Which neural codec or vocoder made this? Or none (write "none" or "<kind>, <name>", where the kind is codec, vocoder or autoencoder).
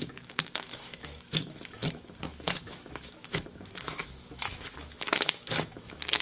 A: autoencoder, DAC-VAE